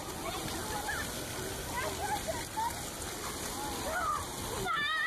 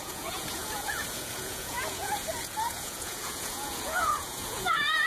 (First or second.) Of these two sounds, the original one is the first